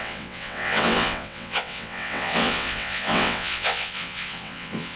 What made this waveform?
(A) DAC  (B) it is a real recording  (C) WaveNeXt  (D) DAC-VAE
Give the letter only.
C